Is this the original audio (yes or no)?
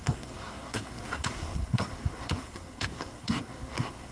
no